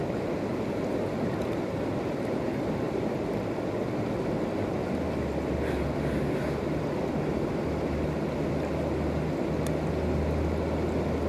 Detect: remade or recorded recorded